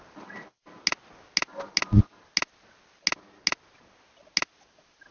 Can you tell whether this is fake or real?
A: real